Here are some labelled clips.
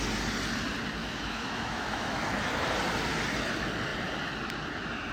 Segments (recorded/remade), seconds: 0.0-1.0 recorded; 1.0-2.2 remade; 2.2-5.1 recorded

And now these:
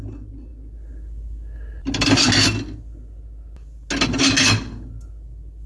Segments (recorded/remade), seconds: 0.0-5.7 recorded

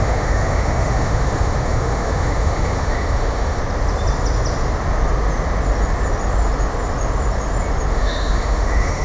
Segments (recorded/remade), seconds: 0.0-3.6 remade; 3.6-7.9 recorded; 7.9-9.0 remade

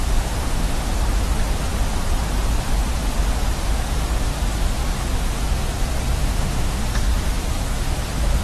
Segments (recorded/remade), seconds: 0.0-0.4 recorded; 0.4-0.9 remade; 0.9-6.2 recorded; 6.2-6.8 remade; 6.8-8.4 recorded

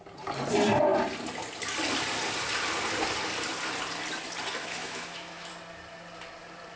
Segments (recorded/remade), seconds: 0.0-4.6 recorded; 4.6-5.5 remade; 5.5-6.8 recorded

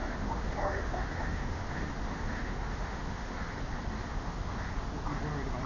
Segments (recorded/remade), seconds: 0.0-3.4 remade; 3.4-4.1 recorded; 4.1-4.7 remade; 4.7-5.7 recorded

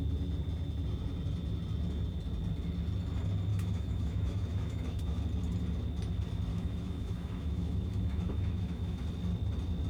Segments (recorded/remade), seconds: 0.0-3.5 recorded; 3.5-5.2 remade; 5.2-6.5 recorded; 6.5-9.0 remade; 9.0-9.9 recorded

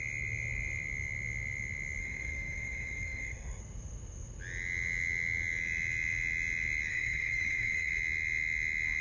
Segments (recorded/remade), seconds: 0.0-2.0 recorded; 2.0-3.6 remade; 3.6-6.9 recorded; 6.9-7.9 remade; 7.9-9.0 recorded